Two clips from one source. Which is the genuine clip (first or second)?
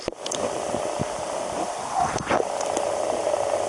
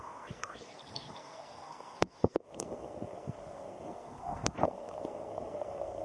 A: first